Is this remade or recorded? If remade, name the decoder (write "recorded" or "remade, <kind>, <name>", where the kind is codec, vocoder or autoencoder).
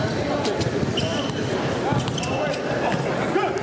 recorded